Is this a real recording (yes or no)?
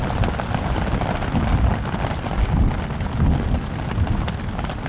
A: yes